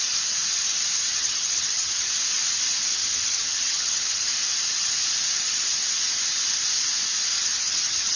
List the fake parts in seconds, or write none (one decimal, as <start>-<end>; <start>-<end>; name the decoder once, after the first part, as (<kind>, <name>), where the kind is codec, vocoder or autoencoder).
1.1-2.1 (vocoder, HiFi-GAN); 2.9-4.3; 7.3-8.2